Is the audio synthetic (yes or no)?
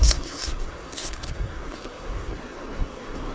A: yes